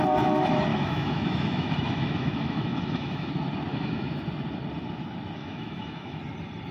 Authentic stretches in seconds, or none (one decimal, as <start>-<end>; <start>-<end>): 0.0-0.7; 3.3-3.7; 4.2-5.4; 6.2-6.7